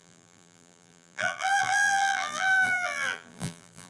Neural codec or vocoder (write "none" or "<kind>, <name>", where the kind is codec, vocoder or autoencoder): vocoder, BigVGAN v2